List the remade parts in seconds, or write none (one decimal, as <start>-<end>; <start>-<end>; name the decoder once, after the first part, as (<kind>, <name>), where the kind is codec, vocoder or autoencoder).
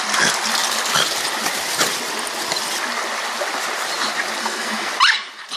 4.4-4.9 (codec, SNAC)